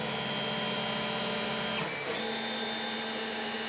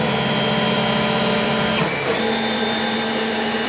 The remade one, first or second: second